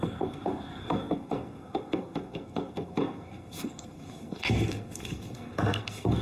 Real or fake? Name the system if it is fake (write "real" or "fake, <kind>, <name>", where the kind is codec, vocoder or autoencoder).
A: fake, codec, SNAC